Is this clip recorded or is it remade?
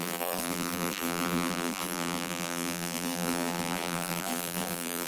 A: remade